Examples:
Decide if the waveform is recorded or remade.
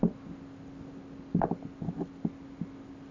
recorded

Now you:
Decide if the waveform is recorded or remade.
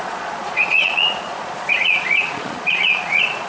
remade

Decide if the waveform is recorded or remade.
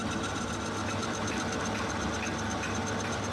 recorded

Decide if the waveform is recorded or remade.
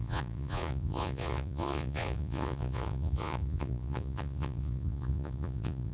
remade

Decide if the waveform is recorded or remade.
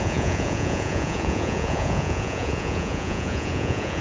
remade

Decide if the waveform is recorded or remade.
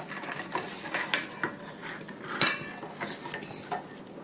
recorded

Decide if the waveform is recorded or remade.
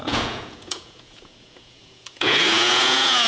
remade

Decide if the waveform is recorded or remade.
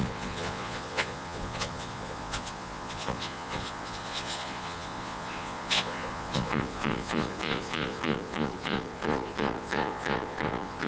remade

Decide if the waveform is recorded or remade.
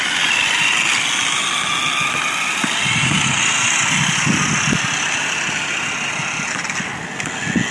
recorded